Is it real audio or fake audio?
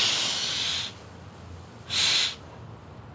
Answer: real